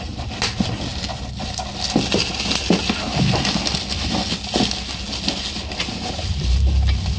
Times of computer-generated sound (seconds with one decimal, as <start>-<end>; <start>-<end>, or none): none